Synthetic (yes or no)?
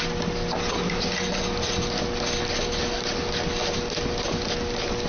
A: no